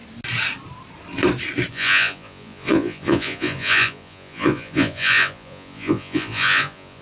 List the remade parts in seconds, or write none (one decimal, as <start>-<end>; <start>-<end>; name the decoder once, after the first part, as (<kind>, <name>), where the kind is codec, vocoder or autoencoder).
1.7-7.0 (vocoder, Vocos)